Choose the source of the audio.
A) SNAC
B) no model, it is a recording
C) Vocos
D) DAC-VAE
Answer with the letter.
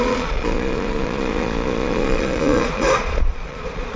C